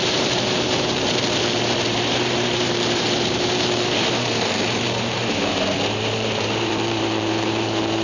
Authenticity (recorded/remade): remade